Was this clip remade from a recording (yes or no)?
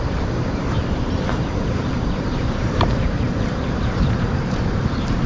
yes